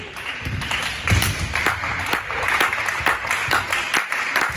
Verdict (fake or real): real